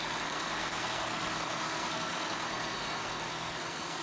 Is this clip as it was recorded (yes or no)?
no